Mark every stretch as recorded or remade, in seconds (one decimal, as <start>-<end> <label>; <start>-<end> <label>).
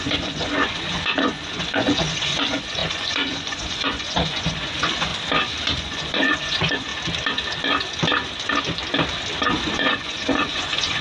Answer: 0.0-5.1 remade; 5.1-5.8 recorded; 5.8-6.9 remade; 6.9-9.6 recorded; 9.6-11.0 remade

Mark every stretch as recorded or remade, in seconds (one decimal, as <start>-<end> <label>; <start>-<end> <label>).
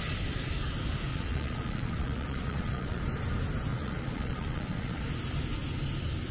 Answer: 0.0-1.1 recorded; 1.1-3.0 remade; 3.0-3.7 recorded; 3.7-5.0 remade; 5.0-6.3 recorded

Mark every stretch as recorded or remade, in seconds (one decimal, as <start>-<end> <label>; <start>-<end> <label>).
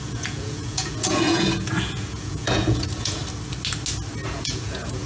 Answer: 0.0-3.2 remade; 3.2-4.3 recorded; 4.3-5.1 remade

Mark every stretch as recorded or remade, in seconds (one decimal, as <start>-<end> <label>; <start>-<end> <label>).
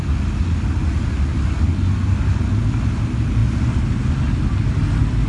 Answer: 0.0-5.3 recorded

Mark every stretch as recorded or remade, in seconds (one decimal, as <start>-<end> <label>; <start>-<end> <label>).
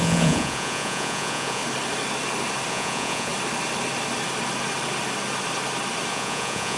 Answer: 0.0-1.6 remade; 1.6-2.7 recorded; 2.7-3.3 remade; 3.3-6.1 recorded; 6.1-6.8 remade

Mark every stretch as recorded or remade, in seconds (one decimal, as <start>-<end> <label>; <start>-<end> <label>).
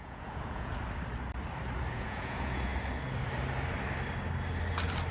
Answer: 0.0-0.7 remade; 0.7-1.9 recorded; 1.9-2.7 remade; 2.7-5.1 recorded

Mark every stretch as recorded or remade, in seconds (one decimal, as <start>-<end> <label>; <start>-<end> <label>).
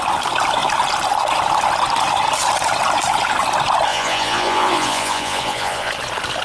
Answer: 0.0-3.9 recorded; 3.9-5.9 remade; 5.9-6.4 recorded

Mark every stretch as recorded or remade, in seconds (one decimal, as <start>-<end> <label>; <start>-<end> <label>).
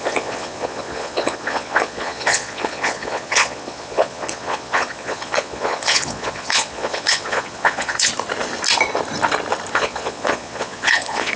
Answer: 0.0-8.1 remade; 8.1-9.7 recorded; 9.7-11.4 remade